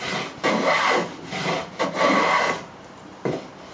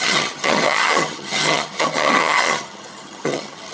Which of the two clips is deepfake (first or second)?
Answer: second